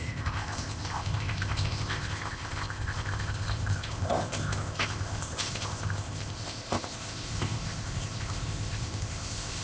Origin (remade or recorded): remade